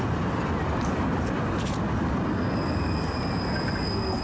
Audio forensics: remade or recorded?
recorded